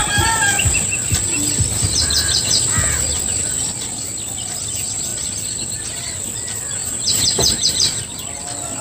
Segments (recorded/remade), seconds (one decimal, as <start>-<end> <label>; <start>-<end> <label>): 0.0-4.6 recorded; 4.6-8.8 remade